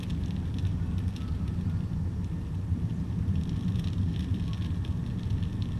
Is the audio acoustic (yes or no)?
yes